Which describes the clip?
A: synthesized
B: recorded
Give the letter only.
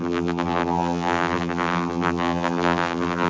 A